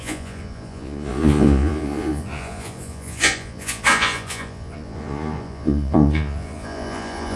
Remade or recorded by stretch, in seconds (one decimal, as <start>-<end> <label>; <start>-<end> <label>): 0.0-7.4 remade